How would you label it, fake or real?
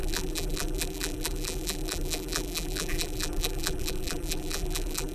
fake